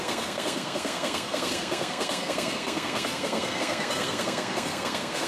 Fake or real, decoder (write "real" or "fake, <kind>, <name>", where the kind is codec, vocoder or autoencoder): fake, codec, SNAC